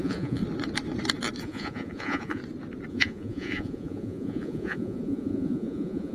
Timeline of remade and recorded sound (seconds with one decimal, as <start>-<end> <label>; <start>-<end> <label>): 0.0-0.4 remade; 0.4-1.4 recorded; 1.4-2.4 remade; 2.4-2.9 recorded; 2.9-6.1 remade